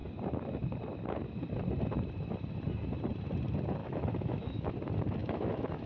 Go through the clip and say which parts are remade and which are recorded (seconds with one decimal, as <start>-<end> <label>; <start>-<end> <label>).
0.0-3.8 recorded; 3.8-4.7 remade; 4.7-5.2 recorded; 5.2-5.9 remade